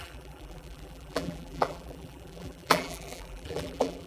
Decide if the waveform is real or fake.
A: fake